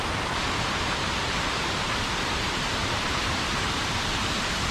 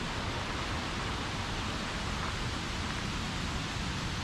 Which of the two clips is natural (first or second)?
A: second